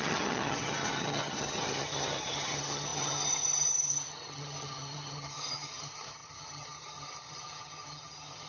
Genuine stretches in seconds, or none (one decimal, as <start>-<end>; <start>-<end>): none